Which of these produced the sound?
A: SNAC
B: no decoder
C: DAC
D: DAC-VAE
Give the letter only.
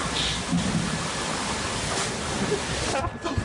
B